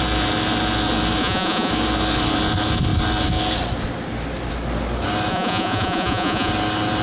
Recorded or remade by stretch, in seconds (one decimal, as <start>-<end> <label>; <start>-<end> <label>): 0.0-1.2 recorded; 1.2-1.7 remade; 1.7-5.3 recorded; 5.3-6.5 remade; 6.5-7.0 recorded